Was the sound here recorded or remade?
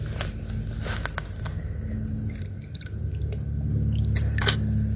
recorded